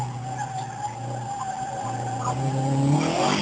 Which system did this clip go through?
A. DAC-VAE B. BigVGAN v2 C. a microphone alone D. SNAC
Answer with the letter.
C